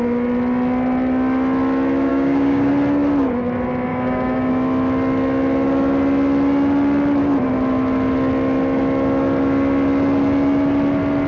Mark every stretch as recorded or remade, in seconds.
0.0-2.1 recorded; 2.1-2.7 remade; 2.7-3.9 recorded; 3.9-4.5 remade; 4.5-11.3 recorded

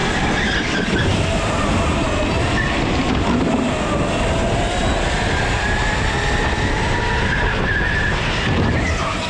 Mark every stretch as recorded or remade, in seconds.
0.0-9.3 recorded